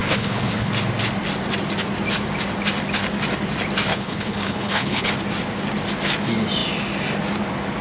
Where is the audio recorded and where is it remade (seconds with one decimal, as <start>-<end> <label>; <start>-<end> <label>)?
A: 0.0-0.7 remade; 0.7-3.9 recorded; 3.9-5.1 remade; 5.1-7.8 recorded